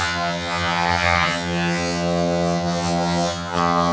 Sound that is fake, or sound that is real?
fake